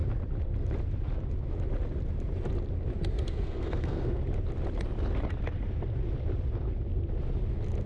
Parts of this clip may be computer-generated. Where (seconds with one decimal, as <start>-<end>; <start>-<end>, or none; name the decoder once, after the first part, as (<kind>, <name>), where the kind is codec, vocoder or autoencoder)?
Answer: 3.1-4.2 (codec, SNAC)

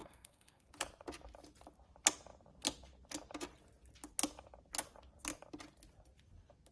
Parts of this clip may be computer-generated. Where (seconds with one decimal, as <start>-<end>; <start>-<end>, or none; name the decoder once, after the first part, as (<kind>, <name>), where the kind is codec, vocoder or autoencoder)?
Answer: 0.0-0.7 (codec, SNAC)

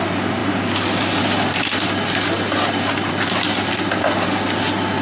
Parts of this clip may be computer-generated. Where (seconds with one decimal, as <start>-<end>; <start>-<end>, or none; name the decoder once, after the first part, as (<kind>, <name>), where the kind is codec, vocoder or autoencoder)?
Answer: none

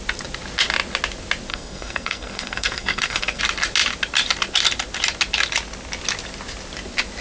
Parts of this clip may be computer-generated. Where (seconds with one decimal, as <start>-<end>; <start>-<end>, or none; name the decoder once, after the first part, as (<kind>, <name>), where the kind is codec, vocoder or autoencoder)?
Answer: 1.5-3.4 (codec, SNAC)

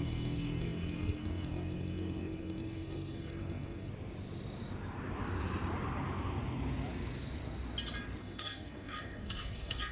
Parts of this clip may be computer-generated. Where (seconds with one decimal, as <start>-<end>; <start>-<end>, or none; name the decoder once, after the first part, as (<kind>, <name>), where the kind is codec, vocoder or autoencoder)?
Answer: 0.0-3.9 (codec, SNAC); 8.2-9.9

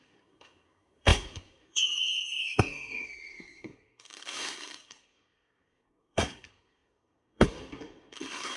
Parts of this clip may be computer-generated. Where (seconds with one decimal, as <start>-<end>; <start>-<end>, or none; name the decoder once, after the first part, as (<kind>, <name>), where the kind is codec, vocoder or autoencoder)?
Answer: 0.0-8.6 (codec, SNAC)